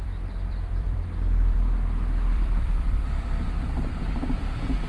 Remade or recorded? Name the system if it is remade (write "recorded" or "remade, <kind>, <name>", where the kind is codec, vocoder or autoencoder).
remade, vocoder, BigVGAN v2